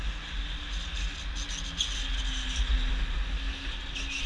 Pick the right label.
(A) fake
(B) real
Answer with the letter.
B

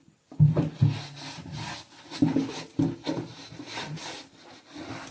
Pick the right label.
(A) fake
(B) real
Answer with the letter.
B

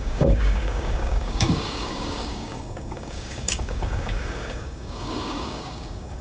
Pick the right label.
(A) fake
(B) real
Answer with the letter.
A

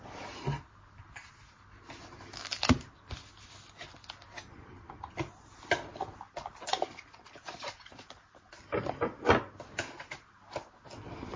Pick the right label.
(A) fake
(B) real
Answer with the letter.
B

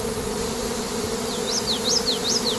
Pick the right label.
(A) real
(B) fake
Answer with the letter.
A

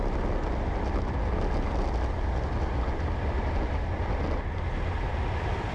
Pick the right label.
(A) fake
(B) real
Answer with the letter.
B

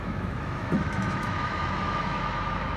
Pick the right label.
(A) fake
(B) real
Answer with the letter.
A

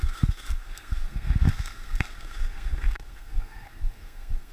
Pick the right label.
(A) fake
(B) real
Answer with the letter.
A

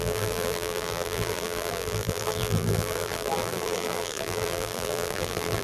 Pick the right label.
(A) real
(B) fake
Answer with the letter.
B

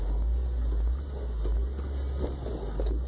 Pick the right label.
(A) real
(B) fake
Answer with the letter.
A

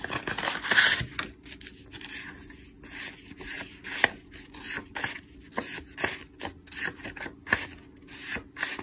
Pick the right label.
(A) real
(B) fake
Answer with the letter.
A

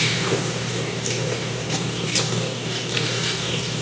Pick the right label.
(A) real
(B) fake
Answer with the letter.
B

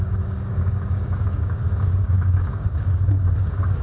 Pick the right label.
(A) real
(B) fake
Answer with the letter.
B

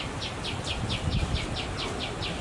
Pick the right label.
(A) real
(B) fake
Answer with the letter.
A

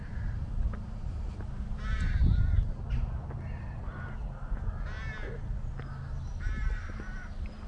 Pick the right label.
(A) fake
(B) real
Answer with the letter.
B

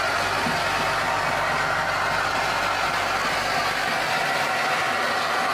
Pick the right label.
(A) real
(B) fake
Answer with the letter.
A